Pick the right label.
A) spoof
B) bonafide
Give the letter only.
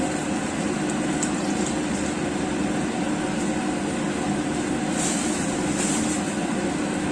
B